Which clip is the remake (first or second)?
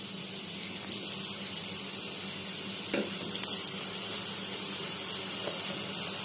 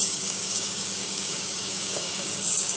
second